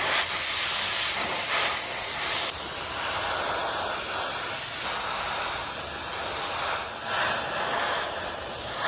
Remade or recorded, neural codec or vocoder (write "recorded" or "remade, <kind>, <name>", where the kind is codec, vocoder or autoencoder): recorded